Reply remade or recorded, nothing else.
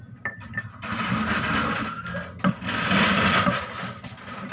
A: recorded